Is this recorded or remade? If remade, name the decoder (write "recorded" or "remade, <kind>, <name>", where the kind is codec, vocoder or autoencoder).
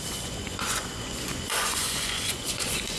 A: remade, vocoder, Vocos